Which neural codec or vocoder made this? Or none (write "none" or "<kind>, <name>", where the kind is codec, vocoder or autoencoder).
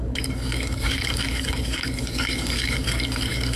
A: codec, DAC